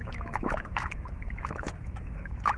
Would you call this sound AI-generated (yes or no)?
yes